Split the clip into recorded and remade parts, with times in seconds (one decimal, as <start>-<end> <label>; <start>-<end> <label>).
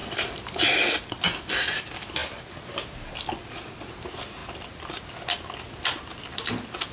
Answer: 0.0-0.6 remade; 0.6-6.9 recorded